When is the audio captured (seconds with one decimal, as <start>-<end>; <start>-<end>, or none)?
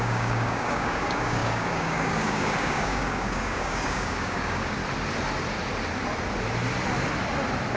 4.8-7.8